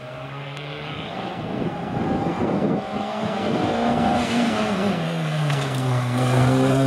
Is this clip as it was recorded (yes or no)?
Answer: no